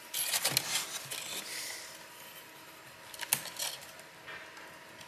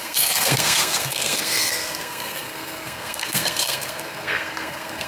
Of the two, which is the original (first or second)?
first